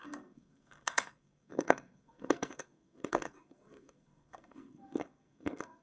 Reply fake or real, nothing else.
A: fake